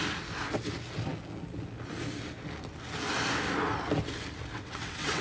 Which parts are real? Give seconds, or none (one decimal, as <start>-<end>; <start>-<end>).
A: 0.0-4.5

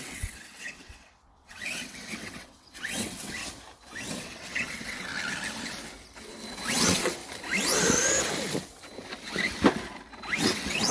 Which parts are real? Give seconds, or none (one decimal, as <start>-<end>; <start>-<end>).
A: 3.4-4.2; 5.1-6.7; 7.2-10.4

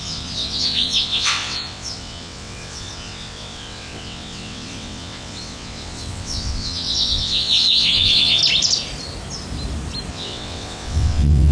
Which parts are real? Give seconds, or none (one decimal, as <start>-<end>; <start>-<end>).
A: 8.4-10.1

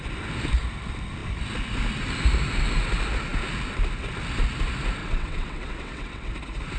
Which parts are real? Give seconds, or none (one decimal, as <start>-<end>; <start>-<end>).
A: 0.0-5.0; 6.3-6.8

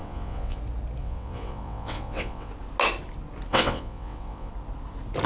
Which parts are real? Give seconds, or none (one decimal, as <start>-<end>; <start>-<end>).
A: 0.6-1.0; 2.5-3.5; 4.5-5.3

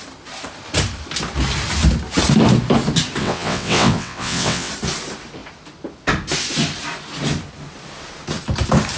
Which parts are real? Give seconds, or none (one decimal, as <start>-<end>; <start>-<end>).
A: 0.0-3.2; 4.7-9.0

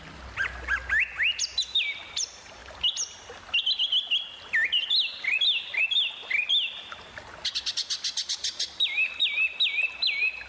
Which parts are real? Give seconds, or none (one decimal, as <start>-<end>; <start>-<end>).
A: 0.0-10.5

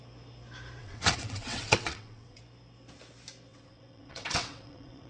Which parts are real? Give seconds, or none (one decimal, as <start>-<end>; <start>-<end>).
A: 0.0-0.8; 2.4-3.5